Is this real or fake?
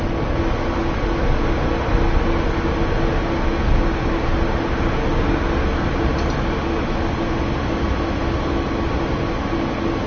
real